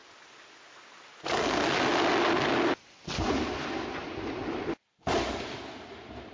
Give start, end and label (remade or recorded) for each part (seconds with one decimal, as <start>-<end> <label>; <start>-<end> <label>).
0.0-6.3 recorded